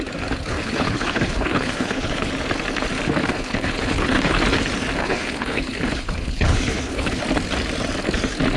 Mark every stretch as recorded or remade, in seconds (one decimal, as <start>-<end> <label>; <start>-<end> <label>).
0.0-0.4 recorded; 0.4-2.3 remade; 2.3-3.2 recorded; 3.2-4.4 remade; 4.4-5.0 recorded; 5.0-7.2 remade; 7.2-8.6 recorded